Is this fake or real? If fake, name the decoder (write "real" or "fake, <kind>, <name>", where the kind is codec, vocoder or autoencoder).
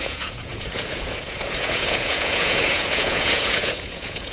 fake, vocoder, Vocos